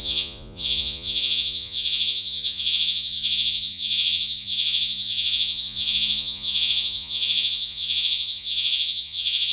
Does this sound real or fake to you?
fake